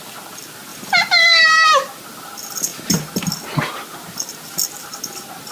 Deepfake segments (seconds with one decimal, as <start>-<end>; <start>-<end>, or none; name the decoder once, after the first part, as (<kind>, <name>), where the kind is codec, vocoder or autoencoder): 0.7-1.4 (vocoder, BigVGAN v2)